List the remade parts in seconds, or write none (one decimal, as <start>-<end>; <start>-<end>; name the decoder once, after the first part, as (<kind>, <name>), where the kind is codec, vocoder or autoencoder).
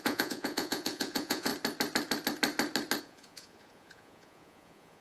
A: 0.0-1.5 (vocoder, Vocos); 3.0-5.0